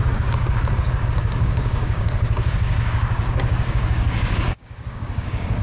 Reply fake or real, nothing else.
fake